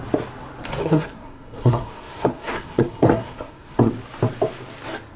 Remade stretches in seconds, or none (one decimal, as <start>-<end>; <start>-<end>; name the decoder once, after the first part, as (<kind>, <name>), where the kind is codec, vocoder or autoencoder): 0.8-3.9 (codec, SNAC)